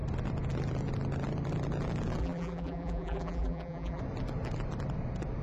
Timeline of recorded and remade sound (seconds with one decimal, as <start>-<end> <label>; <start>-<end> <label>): 0.0-2.2 recorded; 2.2-4.0 remade; 4.0-5.4 recorded